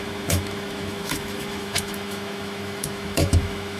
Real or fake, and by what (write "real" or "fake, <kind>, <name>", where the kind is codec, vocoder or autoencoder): fake, autoencoder, DAC-VAE